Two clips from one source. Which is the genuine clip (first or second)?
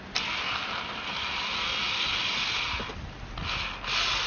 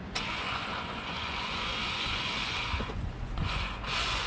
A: first